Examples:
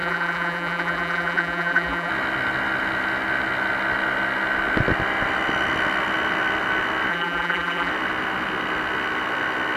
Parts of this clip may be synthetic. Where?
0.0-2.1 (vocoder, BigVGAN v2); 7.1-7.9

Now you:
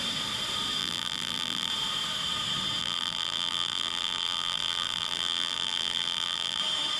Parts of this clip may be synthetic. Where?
0.8-1.7 (vocoder, BigVGAN v2); 2.8-6.6

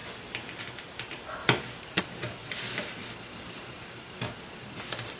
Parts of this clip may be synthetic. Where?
0.0-0.6 (vocoder, BigVGAN v2); 1.4-2.0; 2.4-4.8

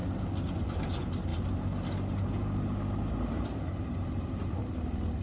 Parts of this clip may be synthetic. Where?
1.3-4.4 (vocoder, BigVGAN v2)

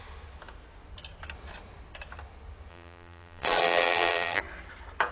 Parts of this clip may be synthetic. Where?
2.7-4.4 (vocoder, BigVGAN v2)

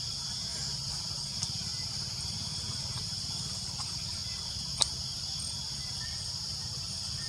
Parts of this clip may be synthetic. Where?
0.0-0.5 (vocoder, BigVGAN v2); 1.1-1.7; 2.8-4.2

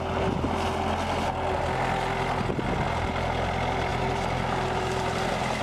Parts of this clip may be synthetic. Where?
3.9-5.6 (vocoder, BigVGAN v2)

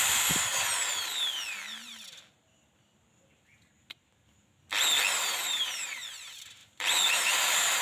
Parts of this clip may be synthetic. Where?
0.0-0.5 (vocoder, BigVGAN v2); 5.2-7.8